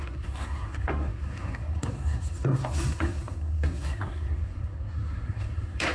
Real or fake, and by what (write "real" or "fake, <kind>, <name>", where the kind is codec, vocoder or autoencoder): fake, codec, SNAC